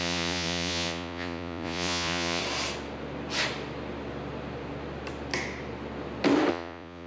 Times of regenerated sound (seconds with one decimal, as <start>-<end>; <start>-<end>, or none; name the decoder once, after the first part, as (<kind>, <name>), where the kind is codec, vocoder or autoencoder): 0.0-2.4 (vocoder, Vocos); 6.5-7.1